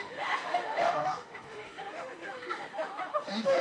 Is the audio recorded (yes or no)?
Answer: no